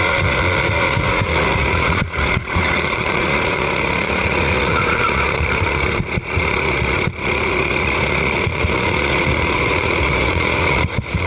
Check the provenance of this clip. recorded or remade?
remade